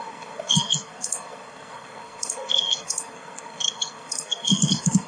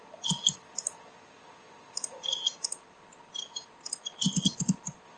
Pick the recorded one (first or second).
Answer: second